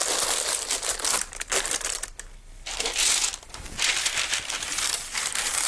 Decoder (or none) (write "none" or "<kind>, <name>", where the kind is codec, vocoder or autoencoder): none